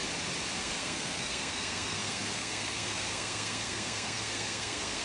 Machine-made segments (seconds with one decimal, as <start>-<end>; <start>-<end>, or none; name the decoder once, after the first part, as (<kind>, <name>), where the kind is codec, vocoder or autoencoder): 0.6-5.0 (codec, SNAC)

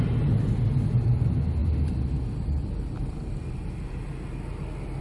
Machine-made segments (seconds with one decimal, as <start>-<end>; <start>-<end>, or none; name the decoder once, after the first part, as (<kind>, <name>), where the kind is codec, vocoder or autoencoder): none

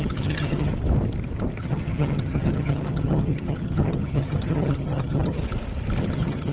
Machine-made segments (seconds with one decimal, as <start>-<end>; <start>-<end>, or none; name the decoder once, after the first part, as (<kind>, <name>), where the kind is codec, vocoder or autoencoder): 0.0-0.7 (vocoder, HiFi-GAN); 1.6-5.4; 6.0-6.5